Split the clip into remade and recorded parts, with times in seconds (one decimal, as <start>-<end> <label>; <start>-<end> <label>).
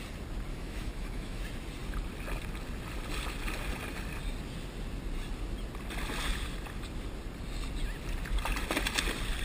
0.0-0.5 recorded; 0.5-1.4 remade; 1.4-9.4 recorded